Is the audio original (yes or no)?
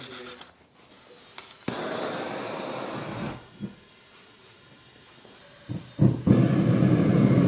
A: yes